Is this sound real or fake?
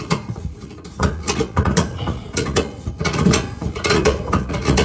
fake